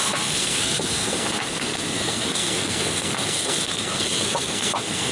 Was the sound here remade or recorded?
remade